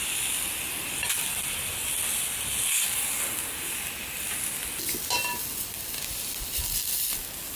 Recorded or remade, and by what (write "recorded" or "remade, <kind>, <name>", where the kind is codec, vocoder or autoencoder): recorded